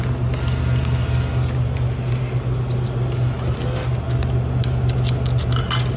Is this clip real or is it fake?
real